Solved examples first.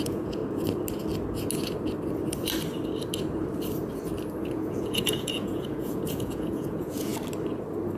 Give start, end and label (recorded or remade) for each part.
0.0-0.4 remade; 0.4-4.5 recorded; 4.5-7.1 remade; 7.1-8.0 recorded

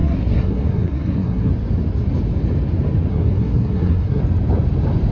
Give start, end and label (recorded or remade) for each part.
0.0-1.5 remade; 1.5-3.1 recorded; 3.1-4.2 remade; 4.2-5.1 recorded

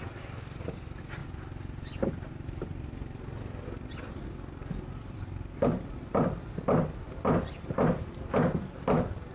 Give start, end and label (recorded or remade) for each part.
0.0-9.3 recorded

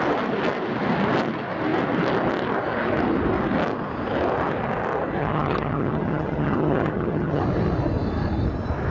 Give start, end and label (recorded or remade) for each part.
0.0-5.2 recorded; 5.2-7.4 remade; 7.4-8.9 recorded

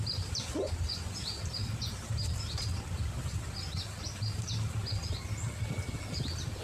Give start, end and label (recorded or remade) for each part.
0.0-6.6 recorded

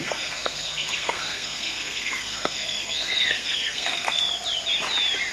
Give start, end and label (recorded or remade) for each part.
0.0-4.2 remade; 4.2-5.3 recorded

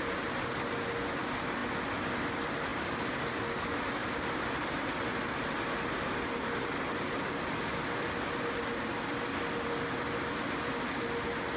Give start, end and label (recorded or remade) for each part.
0.0-11.6 recorded

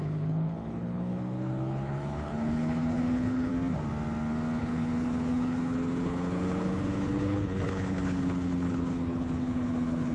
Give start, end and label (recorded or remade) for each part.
0.0-3.5 remade; 3.5-4.6 recorded; 4.6-10.1 remade